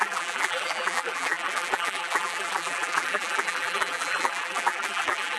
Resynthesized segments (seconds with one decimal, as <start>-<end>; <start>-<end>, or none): 0.0-5.4